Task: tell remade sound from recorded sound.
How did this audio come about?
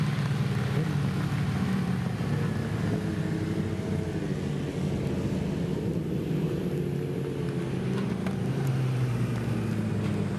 recorded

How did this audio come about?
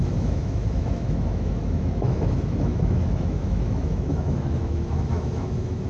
remade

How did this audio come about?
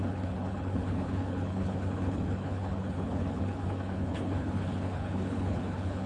remade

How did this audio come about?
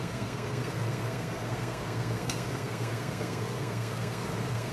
remade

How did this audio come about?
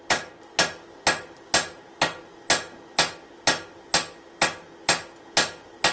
recorded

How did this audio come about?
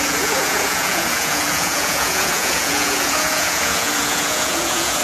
remade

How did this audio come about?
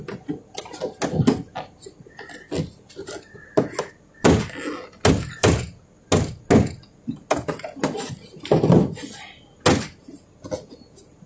recorded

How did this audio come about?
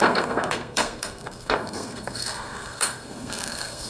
remade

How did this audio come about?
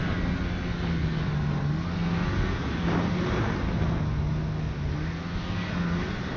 recorded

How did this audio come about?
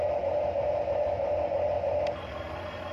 recorded